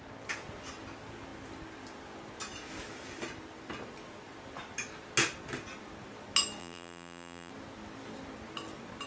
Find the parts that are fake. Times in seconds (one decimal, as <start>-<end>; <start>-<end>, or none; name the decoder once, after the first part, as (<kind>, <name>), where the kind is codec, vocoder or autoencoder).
6.6-7.5 (vocoder, BigVGAN v2)